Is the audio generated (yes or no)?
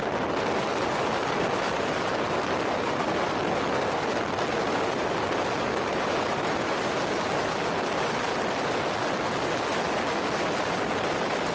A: no